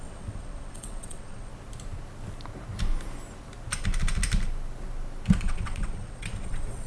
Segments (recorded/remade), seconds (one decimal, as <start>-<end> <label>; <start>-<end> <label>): 0.0-1.5 remade; 1.5-5.4 recorded; 5.4-6.9 remade